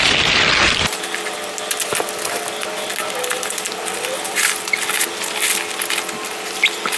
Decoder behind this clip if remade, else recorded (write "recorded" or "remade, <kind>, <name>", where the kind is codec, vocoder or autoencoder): recorded